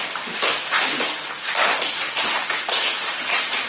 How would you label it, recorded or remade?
recorded